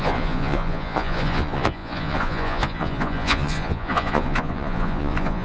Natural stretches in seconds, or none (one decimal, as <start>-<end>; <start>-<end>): none